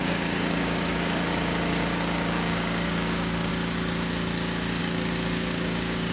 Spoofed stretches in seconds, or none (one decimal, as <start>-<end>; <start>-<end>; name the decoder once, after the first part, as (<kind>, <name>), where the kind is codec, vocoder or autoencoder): 0.0-3.5 (codec, DAC); 4.8-6.1